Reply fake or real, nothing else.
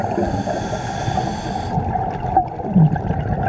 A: real